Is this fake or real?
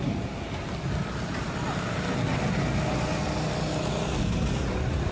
real